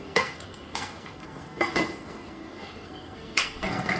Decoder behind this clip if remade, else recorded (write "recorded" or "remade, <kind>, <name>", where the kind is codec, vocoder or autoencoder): remade, codec, SNAC